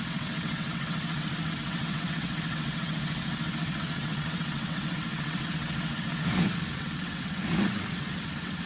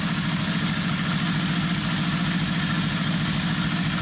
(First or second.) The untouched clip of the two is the second